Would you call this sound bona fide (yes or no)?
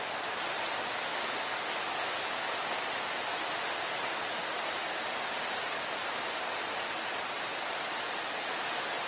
yes